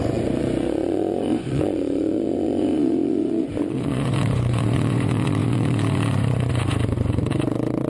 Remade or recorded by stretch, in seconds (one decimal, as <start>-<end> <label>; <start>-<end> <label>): 0.0-7.9 remade